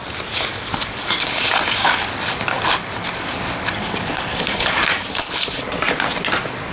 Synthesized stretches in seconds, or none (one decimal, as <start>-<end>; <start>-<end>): 0.5-1.4; 1.8-5.7